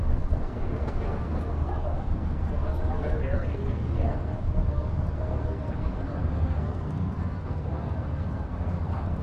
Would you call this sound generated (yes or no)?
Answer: yes